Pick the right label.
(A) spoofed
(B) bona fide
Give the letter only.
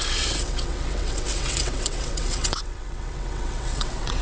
A